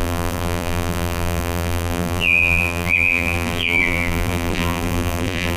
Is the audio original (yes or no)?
no